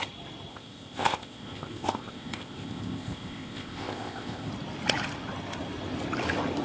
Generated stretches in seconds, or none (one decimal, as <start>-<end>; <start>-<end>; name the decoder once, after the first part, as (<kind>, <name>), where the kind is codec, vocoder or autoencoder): 0.5-4.5 (codec, ZipCodec)